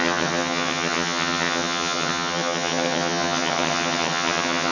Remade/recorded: remade